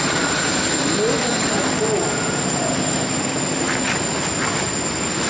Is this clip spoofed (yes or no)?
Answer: no